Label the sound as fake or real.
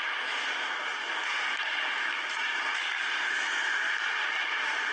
real